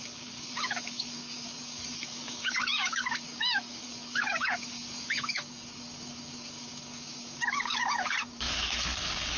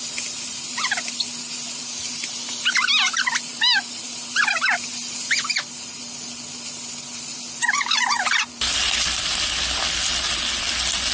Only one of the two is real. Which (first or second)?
second